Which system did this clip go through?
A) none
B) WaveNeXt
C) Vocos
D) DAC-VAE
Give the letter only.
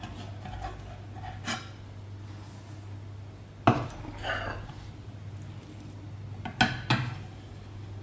A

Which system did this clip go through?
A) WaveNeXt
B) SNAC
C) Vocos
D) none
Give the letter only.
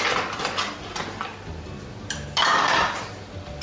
D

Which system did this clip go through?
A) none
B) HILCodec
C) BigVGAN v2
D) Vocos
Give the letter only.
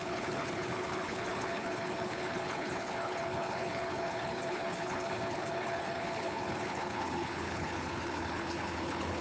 B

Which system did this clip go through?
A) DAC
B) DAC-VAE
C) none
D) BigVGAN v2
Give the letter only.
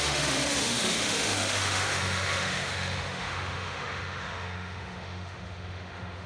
B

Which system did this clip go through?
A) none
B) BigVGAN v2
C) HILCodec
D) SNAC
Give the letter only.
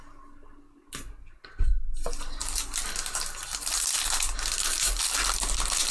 A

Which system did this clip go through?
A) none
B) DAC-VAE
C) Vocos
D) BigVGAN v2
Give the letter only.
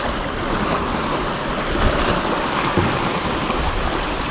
A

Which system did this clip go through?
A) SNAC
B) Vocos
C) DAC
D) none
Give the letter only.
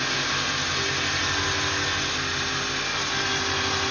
D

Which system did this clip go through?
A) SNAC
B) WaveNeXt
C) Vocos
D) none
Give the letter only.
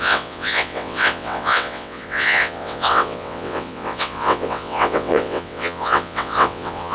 B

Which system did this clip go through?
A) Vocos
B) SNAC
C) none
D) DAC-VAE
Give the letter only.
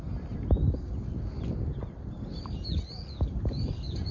C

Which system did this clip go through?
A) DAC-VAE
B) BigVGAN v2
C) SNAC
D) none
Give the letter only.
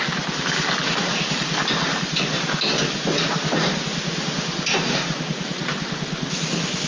D